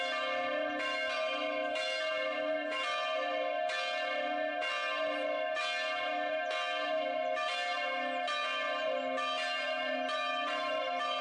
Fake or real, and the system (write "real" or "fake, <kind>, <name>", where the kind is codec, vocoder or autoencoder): real